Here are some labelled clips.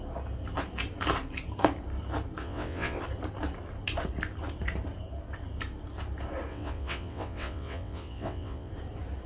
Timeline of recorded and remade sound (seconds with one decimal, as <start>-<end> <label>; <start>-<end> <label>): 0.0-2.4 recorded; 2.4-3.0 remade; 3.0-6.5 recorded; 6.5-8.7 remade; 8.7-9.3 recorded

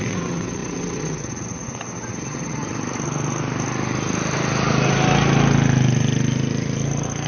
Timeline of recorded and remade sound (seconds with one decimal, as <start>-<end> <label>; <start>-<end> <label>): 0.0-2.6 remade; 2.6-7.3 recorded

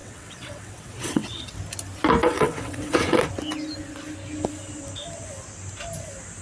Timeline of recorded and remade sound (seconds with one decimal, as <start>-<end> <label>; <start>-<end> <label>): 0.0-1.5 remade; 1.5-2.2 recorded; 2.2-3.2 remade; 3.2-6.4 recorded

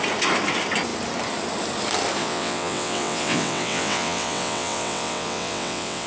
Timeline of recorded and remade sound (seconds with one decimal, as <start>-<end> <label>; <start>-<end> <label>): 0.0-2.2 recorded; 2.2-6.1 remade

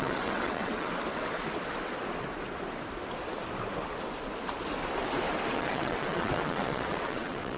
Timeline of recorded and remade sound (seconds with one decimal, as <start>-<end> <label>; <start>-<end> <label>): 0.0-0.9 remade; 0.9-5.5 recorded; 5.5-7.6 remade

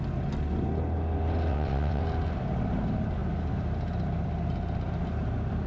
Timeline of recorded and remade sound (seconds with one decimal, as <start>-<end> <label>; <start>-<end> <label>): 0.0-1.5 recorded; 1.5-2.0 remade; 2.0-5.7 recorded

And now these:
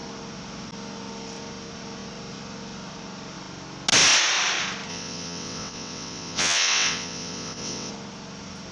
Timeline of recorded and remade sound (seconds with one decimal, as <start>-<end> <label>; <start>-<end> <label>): 0.0-4.9 recorded; 4.9-7.9 remade; 7.9-8.7 recorded

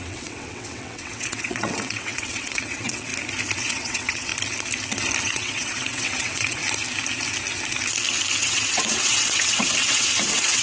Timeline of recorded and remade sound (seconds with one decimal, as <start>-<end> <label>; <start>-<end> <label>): 0.0-3.1 remade; 3.1-3.6 recorded; 3.6-4.3 remade; 4.3-5.2 recorded; 5.2-6.6 remade; 6.6-8.4 recorded; 8.4-10.6 remade